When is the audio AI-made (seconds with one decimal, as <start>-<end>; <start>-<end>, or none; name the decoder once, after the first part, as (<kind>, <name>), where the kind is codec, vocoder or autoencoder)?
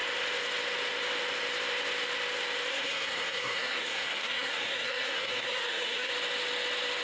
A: 2.7-6.1 (codec, SNAC)